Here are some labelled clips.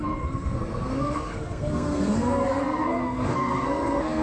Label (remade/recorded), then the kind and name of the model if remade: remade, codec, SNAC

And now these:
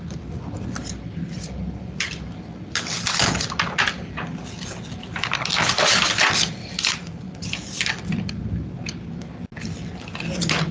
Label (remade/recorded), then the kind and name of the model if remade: recorded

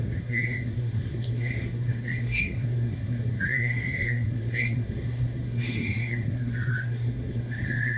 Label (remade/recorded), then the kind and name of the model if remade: remade, codec, SNAC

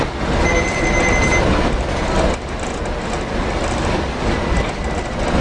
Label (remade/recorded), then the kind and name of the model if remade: recorded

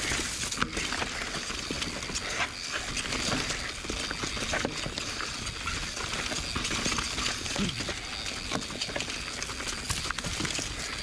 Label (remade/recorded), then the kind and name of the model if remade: recorded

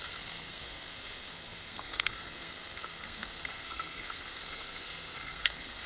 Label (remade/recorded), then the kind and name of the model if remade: remade, codec, SNAC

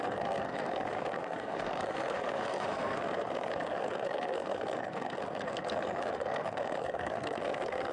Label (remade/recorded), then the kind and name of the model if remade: remade, codec, SNAC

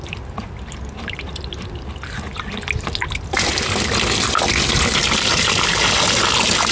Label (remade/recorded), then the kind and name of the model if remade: recorded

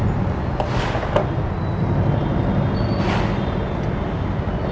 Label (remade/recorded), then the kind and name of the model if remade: recorded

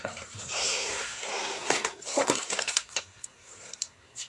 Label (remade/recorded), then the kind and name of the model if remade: remade, codec, SNAC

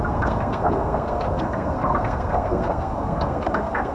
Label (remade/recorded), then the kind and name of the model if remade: remade, codec, SNAC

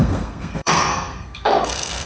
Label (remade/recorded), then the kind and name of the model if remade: remade, codec, SNAC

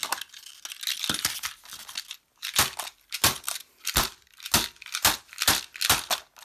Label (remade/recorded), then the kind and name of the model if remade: recorded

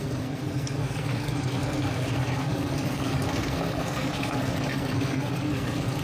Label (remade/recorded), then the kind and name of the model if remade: remade, codec, SNAC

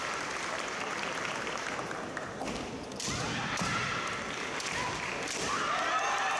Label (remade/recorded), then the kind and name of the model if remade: recorded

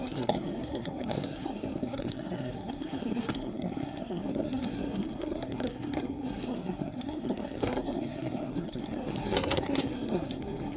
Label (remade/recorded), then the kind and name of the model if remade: remade, codec, SNAC